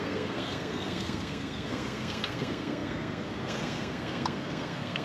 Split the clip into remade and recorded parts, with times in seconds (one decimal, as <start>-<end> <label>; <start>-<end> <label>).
0.0-5.0 remade